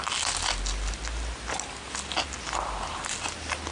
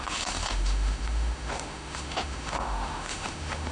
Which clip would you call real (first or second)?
first